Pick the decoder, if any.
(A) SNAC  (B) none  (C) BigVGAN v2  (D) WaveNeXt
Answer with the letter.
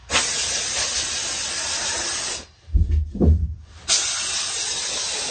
B